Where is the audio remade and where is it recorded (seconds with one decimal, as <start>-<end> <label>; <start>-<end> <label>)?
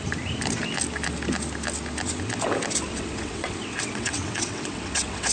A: 0.0-2.9 recorded; 2.9-5.3 remade